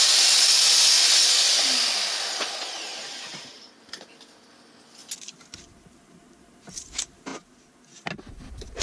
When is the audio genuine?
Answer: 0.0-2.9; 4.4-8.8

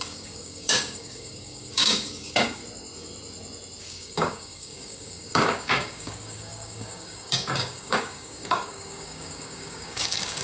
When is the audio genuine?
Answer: 2.6-3.8